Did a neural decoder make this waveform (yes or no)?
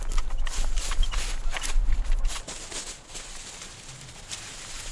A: no